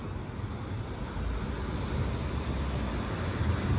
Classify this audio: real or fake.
real